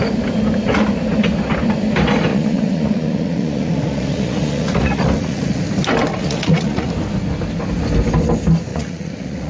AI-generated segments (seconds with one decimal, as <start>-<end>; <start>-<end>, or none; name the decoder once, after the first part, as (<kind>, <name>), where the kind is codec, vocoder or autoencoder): 2.3-5.6 (vocoder, Vocos); 6.1-6.9; 8.7-9.5